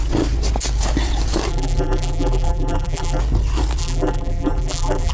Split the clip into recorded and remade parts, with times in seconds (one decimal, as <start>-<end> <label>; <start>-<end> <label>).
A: 0.0-1.5 recorded; 1.5-3.2 remade; 3.2-3.8 recorded; 3.8-5.1 remade